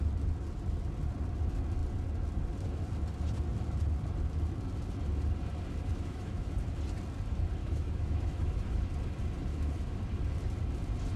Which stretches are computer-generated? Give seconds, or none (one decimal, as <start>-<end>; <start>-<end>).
5.9-6.5; 7.6-8.8; 9.5-10.0